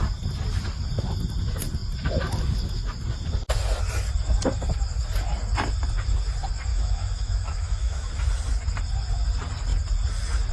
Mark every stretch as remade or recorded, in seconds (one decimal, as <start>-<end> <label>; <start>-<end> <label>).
0.0-6.7 recorded; 6.7-8.1 remade; 8.1-10.5 recorded